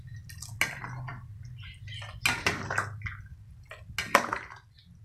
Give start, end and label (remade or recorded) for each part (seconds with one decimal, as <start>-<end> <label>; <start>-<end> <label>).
0.0-5.0 recorded